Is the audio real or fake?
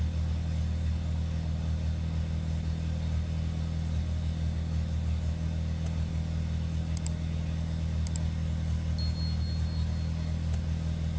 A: real